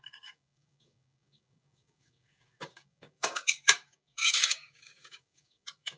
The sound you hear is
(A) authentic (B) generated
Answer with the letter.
B